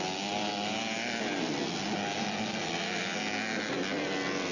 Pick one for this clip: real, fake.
real